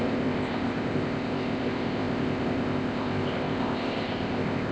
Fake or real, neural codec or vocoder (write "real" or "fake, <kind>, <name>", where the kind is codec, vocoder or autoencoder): fake, codec, ZipCodec